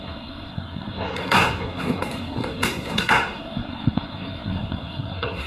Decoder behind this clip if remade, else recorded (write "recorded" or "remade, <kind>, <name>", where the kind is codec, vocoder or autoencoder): remade, codec, SNAC